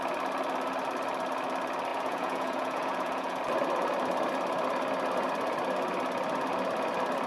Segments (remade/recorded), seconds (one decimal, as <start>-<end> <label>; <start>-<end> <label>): 0.0-1.9 recorded; 1.9-3.4 remade; 3.4-7.3 recorded